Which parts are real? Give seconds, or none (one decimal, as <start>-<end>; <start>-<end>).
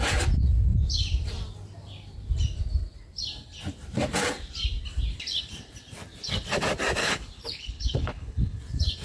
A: 0.0-7.0; 8.6-9.0